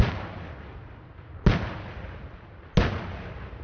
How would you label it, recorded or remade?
recorded